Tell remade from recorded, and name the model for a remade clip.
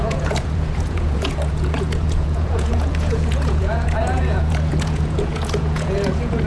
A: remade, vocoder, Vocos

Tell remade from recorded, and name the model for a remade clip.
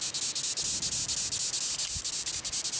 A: recorded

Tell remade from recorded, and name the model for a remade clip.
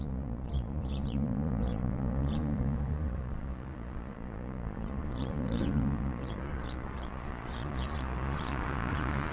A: remade, vocoder, Vocos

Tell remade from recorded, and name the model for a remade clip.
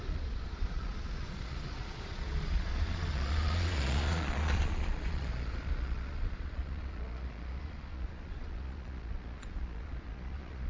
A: remade, vocoder, Vocos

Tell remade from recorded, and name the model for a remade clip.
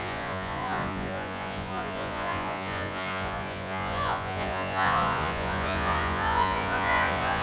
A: remade, vocoder, Vocos